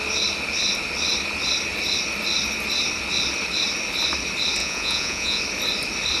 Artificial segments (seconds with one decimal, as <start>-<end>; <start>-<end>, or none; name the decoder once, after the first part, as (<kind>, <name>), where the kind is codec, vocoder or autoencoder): 4.6-5.4 (vocoder, Vocos)

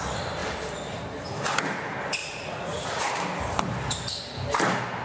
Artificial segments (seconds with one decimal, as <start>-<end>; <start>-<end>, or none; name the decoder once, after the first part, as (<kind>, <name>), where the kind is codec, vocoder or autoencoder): 2.2-3.1 (vocoder, Vocos)

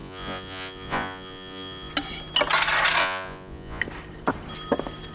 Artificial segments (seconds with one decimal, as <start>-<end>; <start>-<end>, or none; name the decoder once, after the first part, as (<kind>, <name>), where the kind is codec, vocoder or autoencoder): 0.0-1.9 (vocoder, Vocos); 3.0-3.8

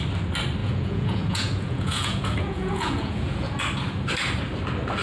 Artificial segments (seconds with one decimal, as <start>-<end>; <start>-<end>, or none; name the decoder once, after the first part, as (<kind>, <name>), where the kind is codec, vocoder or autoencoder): 0.6-3.6 (vocoder, Vocos)